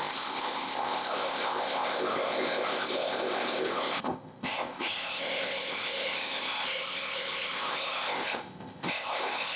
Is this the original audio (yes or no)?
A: no